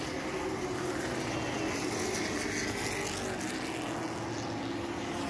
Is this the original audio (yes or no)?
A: yes